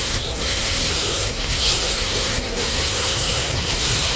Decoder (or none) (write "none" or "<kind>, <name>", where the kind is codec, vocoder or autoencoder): codec, SNAC